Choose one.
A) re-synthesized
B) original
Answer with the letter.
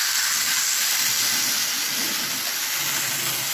B